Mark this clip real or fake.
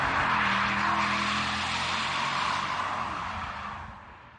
real